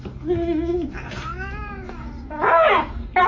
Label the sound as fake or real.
real